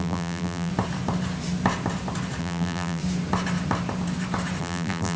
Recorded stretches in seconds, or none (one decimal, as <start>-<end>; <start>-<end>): 0.7-2.4; 3.0-4.6